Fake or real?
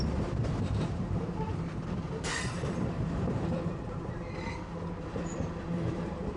fake